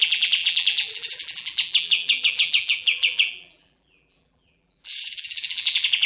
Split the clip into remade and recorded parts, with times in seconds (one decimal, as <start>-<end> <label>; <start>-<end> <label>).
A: 0.0-6.1 remade